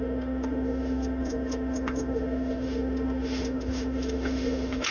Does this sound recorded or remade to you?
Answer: remade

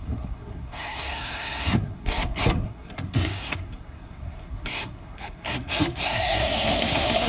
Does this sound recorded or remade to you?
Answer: remade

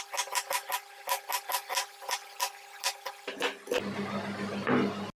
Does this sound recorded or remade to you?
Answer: recorded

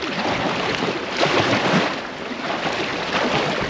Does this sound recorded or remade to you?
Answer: recorded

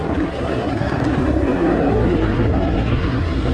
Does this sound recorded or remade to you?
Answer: remade